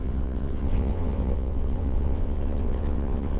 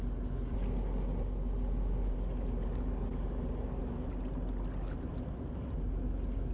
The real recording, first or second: second